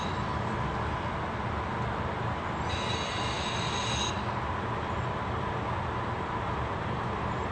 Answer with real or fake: real